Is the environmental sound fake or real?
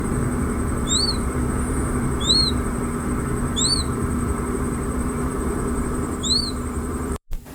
fake